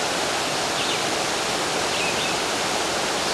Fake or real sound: real